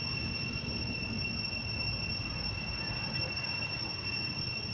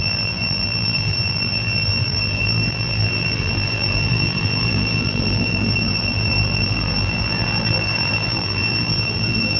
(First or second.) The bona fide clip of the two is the first